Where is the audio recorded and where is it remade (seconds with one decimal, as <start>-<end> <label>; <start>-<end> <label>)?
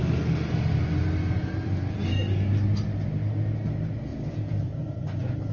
0.0-5.5 recorded